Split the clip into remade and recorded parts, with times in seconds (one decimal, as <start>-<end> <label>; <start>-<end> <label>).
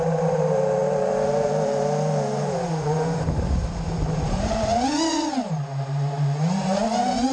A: 0.0-4.7 remade; 4.7-5.5 recorded; 5.5-7.3 remade